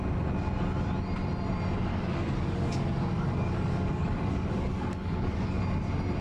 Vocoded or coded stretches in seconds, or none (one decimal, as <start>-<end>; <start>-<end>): 1.9-5.6